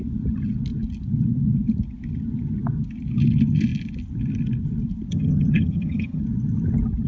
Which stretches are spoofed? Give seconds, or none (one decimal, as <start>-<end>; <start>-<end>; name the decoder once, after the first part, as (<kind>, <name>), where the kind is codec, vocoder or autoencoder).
5.1-6.2 (vocoder, HiFi-GAN)